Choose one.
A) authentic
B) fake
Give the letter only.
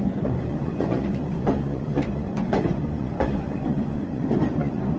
B